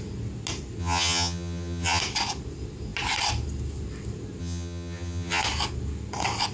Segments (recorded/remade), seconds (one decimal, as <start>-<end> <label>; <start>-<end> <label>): 0.0-0.8 recorded; 0.8-2.0 remade; 2.0-4.4 recorded; 4.4-5.4 remade; 5.4-6.5 recorded